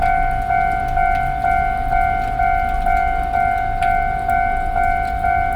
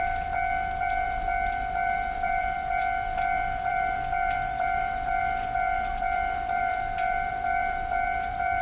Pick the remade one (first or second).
second